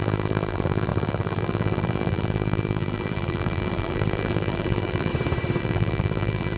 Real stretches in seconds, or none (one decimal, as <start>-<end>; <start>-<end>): 5.1-5.6